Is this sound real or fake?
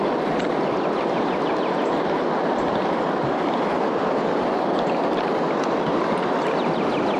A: real